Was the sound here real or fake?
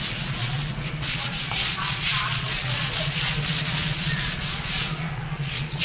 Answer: fake